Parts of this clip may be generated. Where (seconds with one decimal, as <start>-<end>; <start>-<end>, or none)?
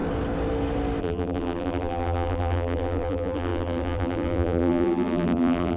1.0-5.8